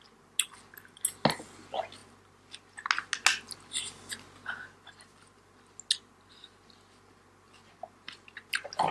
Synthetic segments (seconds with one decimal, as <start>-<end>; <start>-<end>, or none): none